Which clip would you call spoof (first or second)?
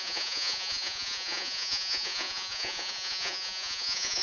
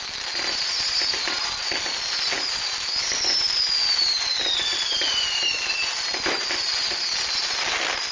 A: first